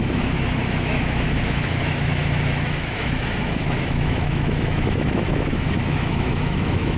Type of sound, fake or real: fake